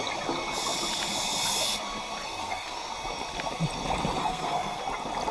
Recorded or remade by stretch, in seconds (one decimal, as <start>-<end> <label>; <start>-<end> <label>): 0.0-2.2 recorded; 2.2-2.9 remade; 2.9-4.2 recorded; 4.2-4.8 remade; 4.8-5.3 recorded